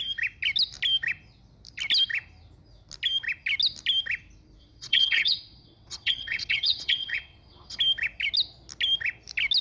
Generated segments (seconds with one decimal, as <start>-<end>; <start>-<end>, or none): 4.6-7.8